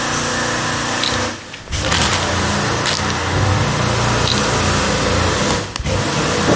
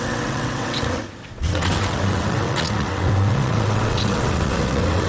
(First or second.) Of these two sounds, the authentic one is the first